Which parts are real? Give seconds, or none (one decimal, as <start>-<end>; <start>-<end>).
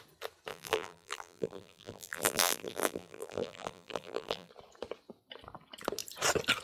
0.0-0.5; 4.5-6.6